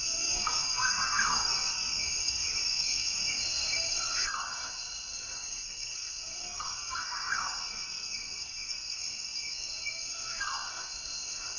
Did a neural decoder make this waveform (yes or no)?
yes